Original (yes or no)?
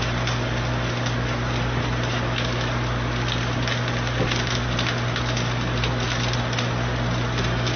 yes